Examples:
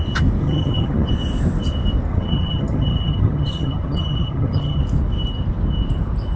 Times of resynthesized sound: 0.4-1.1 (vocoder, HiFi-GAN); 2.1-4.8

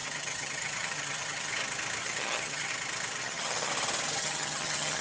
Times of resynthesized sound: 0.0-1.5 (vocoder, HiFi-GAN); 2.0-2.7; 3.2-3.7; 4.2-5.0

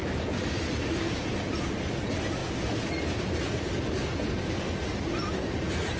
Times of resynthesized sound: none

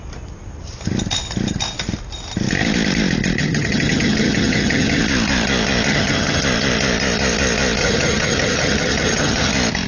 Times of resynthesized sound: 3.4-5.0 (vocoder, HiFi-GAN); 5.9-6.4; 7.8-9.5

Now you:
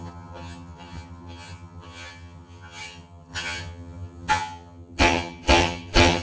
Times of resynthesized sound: 0.0-6.2 (vocoder, HiFi-GAN)

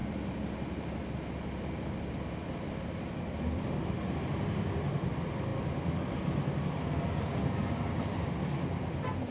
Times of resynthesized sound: none

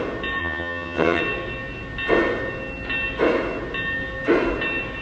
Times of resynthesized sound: 0.4-1.2 (vocoder, HiFi-GAN)

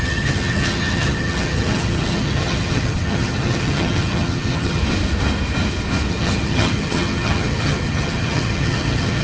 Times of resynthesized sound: 0.0-4.8 (vocoder, HiFi-GAN); 6.1-9.2